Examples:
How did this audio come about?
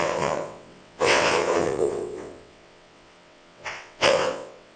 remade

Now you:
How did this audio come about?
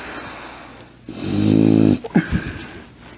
recorded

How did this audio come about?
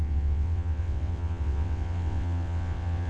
remade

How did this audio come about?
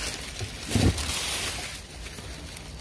recorded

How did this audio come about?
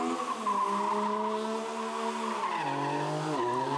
recorded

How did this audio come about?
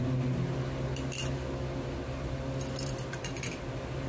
recorded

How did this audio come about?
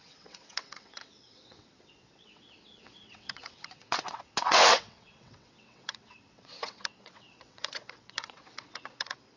remade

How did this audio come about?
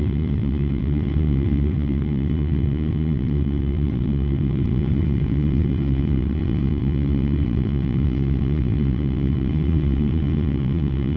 remade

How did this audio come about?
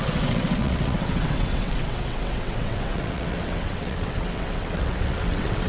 remade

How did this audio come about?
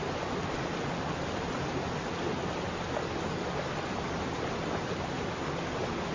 recorded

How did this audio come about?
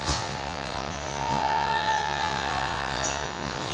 remade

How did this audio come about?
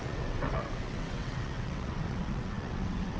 remade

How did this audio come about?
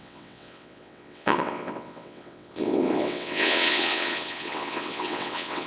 remade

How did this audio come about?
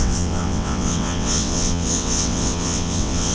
remade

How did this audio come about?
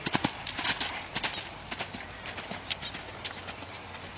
recorded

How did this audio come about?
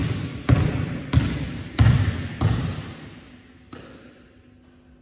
recorded